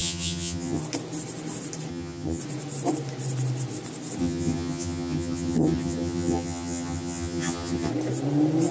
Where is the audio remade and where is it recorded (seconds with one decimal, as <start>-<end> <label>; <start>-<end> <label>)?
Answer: 0.0-0.8 remade; 0.8-1.9 recorded; 1.9-2.4 remade; 2.4-4.2 recorded; 4.2-7.9 remade; 7.9-8.7 recorded